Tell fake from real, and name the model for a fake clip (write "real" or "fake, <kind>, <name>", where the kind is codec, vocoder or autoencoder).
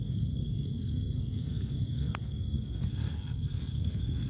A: fake, codec, SNAC